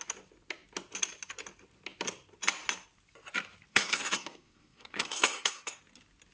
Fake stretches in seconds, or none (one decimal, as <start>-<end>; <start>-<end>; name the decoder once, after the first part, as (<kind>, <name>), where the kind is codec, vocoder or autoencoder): 3.7-5.8 (codec, SNAC)